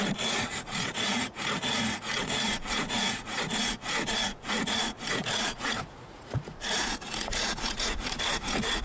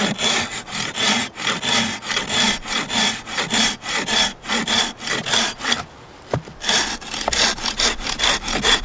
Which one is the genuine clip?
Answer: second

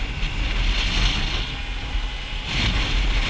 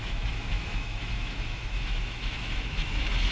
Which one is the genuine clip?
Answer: first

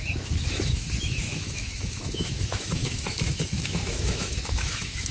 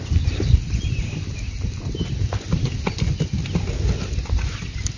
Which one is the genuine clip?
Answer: second